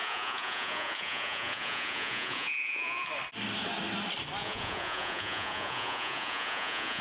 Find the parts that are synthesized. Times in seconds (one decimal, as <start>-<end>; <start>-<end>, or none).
0.0-3.1; 4.4-7.0